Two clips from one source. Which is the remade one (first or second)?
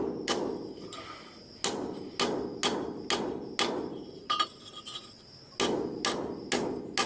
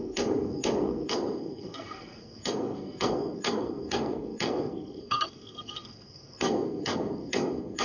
second